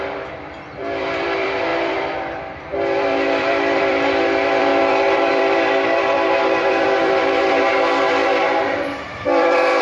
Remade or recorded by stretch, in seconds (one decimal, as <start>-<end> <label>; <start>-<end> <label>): 0.0-9.8 remade